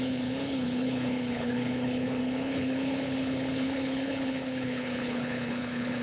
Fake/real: fake